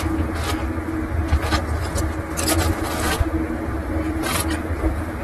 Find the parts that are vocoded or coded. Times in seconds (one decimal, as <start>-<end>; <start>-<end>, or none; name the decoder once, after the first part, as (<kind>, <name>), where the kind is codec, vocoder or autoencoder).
3.8-5.2 (vocoder, BigVGAN v2)